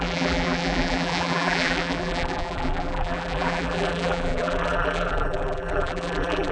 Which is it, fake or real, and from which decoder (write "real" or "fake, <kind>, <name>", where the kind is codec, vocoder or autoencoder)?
fake, vocoder, BigVGAN v2